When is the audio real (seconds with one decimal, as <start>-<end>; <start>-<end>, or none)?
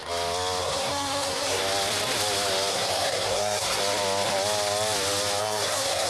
0.0-0.6; 1.6-2.7; 3.8-5.4